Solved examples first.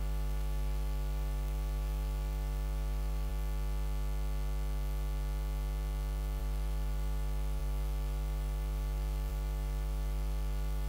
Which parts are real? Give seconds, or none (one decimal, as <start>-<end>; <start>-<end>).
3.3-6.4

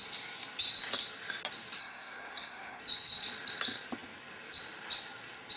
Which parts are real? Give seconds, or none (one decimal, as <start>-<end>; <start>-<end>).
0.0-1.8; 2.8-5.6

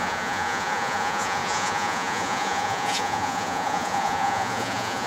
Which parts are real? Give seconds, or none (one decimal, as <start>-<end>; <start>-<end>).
none

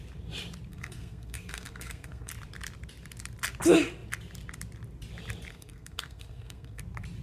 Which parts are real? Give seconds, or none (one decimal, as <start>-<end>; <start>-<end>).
0.0-0.7; 2.3-5.5; 6.8-7.2

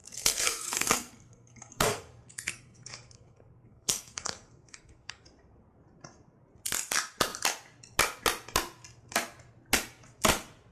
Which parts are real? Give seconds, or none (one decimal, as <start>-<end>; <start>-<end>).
5.2-10.7

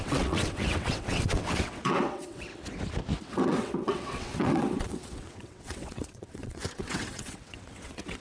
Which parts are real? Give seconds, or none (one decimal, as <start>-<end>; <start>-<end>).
2.5-3.2

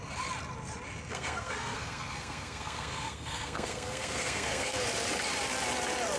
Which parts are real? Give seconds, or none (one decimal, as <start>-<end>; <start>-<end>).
0.0-1.1; 4.8-6.2